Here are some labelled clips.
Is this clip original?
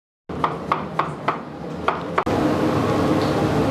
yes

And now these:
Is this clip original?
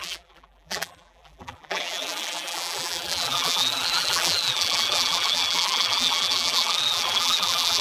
no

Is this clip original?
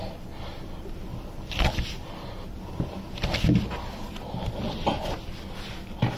yes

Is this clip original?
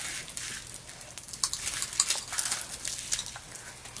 yes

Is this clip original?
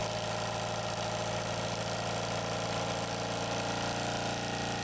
yes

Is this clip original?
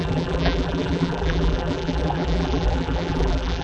no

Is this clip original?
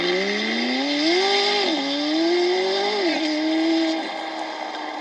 yes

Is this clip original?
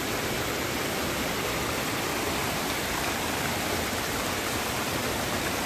no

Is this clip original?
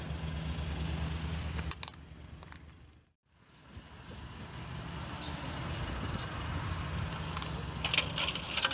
yes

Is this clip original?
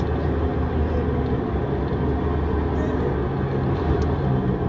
yes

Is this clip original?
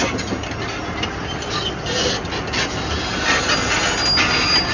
yes